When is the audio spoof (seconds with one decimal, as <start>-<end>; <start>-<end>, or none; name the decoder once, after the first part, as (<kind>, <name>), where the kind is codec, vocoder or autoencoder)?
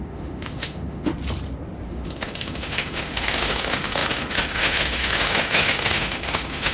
0.0-1.1 (autoencoder, DAC-VAE); 1.9-6.7